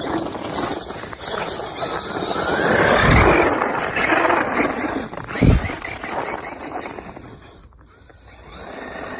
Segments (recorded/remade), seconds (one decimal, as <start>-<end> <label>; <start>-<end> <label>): 0.0-9.2 recorded